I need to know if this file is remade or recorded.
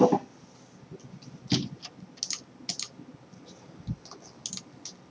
recorded